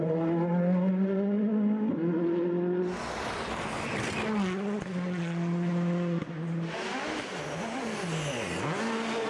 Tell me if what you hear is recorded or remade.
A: recorded